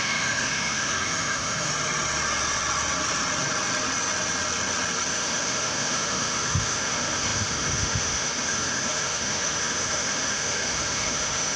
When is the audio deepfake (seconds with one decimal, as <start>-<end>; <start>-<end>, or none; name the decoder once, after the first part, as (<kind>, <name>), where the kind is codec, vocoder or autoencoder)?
0.0-1.7 (autoencoder, DAC-VAE); 5.1-11.6